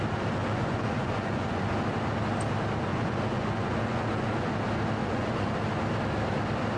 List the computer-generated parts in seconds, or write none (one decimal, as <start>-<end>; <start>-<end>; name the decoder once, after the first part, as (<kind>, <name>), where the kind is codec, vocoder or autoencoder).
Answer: 0.4-1.7 (vocoder, Vocos); 2.9-4.5; 5.0-5.5